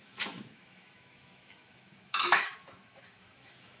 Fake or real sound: fake